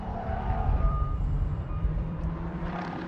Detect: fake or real fake